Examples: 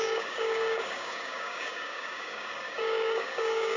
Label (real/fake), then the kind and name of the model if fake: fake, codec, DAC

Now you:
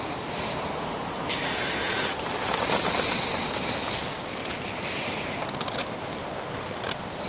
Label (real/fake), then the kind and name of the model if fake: real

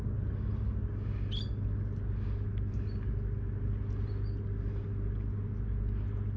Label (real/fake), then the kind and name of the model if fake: real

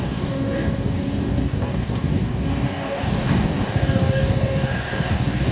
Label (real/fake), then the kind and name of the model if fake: fake, codec, DAC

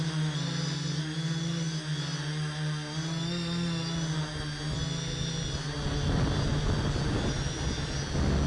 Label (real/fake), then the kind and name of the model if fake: real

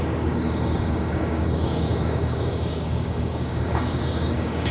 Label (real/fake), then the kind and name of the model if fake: fake, codec, DAC